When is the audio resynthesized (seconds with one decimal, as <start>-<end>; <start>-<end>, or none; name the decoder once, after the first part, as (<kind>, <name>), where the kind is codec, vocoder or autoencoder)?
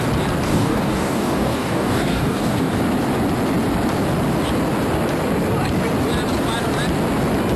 0.5-2.8 (codec, DAC)